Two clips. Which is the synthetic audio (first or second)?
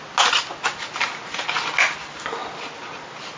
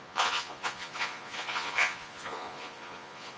second